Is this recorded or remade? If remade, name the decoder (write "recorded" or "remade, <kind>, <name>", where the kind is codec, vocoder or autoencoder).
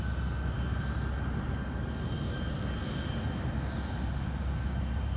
recorded